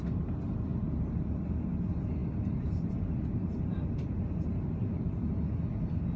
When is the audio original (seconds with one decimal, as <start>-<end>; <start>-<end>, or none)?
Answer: 0.0-6.2